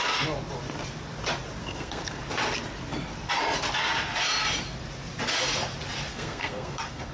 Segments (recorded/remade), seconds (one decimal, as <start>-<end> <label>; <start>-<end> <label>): 0.0-1.6 recorded; 1.6-2.2 remade; 2.2-6.1 recorded; 6.1-7.1 remade